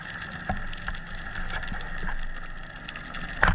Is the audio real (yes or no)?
yes